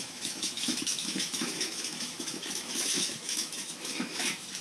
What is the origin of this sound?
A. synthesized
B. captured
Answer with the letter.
A